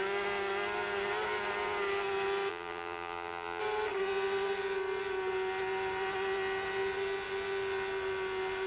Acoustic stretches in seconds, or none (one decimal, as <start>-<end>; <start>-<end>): 0.0-2.5; 3.6-8.7